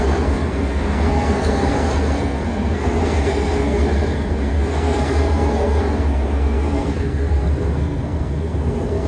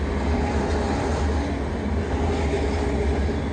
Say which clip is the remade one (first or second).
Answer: first